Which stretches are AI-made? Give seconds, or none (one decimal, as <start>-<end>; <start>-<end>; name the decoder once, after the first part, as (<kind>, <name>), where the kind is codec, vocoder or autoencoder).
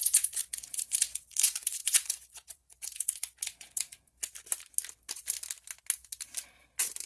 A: 0.0-4.2 (vocoder, Vocos)